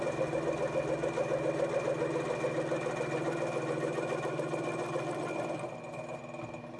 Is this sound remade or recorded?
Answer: recorded